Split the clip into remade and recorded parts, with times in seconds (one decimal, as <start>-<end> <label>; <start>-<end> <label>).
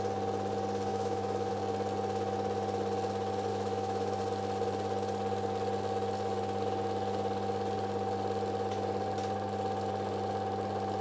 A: 0.0-0.9 recorded; 0.9-1.5 remade; 1.5-3.5 recorded; 3.5-4.2 remade; 4.2-11.0 recorded